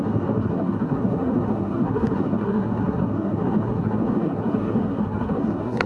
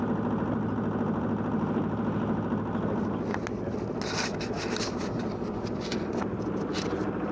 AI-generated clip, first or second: first